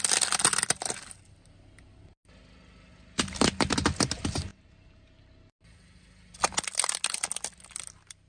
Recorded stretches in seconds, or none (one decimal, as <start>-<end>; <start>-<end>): 0.0-8.3